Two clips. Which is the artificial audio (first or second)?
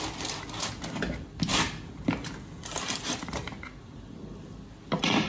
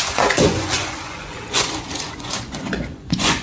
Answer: second